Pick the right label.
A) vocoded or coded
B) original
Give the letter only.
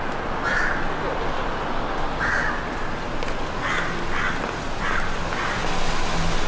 B